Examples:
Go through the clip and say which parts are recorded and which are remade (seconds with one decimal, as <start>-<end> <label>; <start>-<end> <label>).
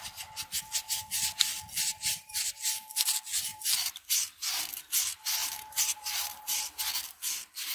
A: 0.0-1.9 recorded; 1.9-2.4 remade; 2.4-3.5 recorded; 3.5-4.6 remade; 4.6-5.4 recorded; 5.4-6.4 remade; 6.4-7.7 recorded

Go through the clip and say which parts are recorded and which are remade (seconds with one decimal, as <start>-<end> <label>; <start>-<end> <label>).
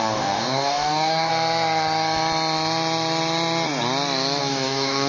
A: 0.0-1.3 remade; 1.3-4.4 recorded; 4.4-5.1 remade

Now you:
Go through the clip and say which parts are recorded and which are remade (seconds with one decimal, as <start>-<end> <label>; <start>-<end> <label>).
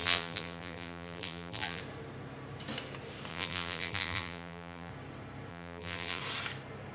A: 0.0-1.8 remade; 1.8-3.3 recorded; 3.3-4.9 remade; 4.9-5.5 recorded; 5.5-6.2 remade; 6.2-6.9 recorded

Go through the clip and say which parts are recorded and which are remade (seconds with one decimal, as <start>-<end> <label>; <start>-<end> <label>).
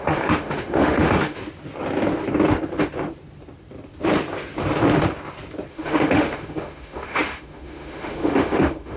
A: 0.0-1.4 remade; 1.4-5.7 recorded; 5.7-9.0 remade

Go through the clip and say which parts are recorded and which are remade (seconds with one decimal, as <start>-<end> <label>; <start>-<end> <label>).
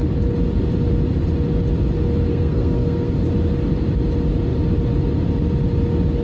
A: 0.0-2.3 recorded; 2.3-3.1 remade; 3.1-6.2 recorded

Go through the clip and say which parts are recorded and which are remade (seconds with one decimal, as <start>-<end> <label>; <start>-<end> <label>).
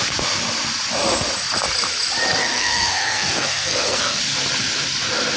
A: 0.0-2.4 recorded; 2.4-4.2 remade; 4.2-5.4 recorded